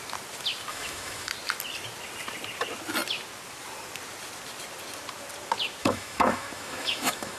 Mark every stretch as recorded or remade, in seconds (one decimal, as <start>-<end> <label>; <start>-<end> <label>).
0.0-0.7 recorded; 0.7-1.3 remade; 1.3-5.8 recorded; 5.8-7.4 remade